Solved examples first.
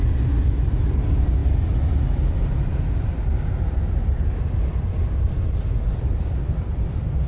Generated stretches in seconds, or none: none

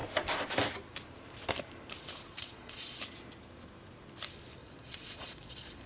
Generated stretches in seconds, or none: 2.3-3.0 (vocoder, Vocos); 4.6-5.9

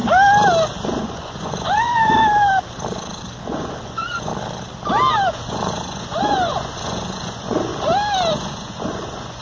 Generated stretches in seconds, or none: 0.7-2.2 (vocoder, Vocos); 3.4-4.3; 5.3-7.7; 8.3-9.4

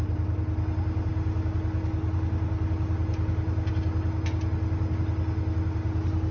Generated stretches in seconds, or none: none

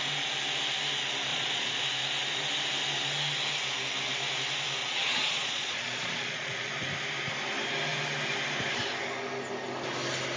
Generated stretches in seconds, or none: 1.3-1.8 (vocoder, Vocos); 4.8-6.7

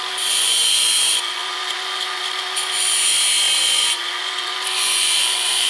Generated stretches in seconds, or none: 0.0-3.1 (vocoder, Vocos); 3.6-5.7

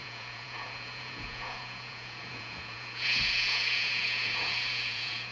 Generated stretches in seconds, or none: 0.0-5.3 (vocoder, Vocos)